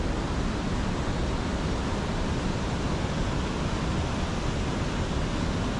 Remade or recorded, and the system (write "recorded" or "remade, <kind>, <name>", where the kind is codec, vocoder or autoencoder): recorded